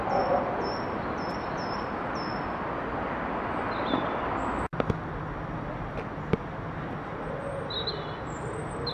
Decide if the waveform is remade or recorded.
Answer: recorded